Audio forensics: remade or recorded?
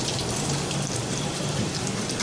remade